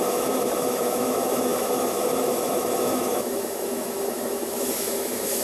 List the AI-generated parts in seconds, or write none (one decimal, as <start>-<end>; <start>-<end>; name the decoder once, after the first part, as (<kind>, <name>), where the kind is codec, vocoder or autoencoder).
0.0-5.4 (autoencoder, DAC-VAE)